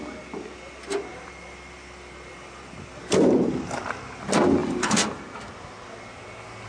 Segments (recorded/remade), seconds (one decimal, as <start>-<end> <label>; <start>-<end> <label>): 0.0-1.1 recorded; 1.1-3.8 remade; 3.8-4.6 recorded; 4.6-5.2 remade; 5.2-6.7 recorded